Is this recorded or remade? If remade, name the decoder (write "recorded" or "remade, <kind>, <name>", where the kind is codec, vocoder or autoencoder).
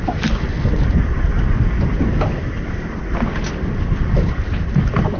recorded